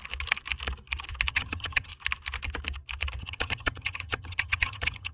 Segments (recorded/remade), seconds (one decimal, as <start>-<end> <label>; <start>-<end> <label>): 0.0-1.3 recorded; 1.3-1.9 remade; 1.9-3.2 recorded; 3.2-5.1 remade